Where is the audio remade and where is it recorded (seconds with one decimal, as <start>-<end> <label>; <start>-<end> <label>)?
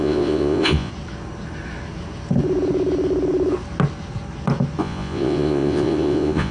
0.0-0.9 remade; 0.9-4.8 recorded; 4.8-6.5 remade